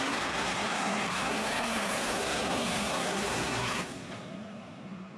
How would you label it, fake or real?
fake